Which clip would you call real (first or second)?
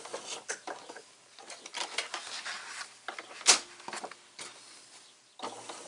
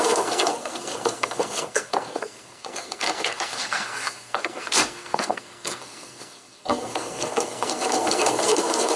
first